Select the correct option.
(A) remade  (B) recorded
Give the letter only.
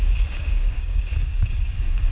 A